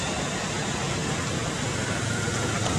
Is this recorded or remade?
recorded